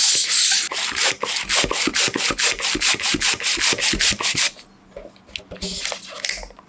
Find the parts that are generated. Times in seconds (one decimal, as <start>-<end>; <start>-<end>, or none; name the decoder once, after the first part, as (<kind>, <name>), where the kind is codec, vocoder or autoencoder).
none